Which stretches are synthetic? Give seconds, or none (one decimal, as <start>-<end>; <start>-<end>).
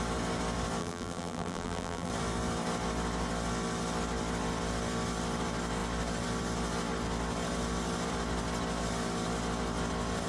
0.8-2.1